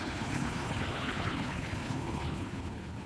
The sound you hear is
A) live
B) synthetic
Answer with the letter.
B